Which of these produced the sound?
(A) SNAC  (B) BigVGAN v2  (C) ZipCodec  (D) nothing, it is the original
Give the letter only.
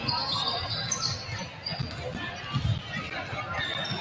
D